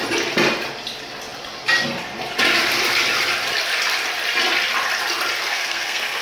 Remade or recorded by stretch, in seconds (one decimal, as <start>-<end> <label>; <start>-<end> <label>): 0.0-5.4 recorded; 5.4-6.2 remade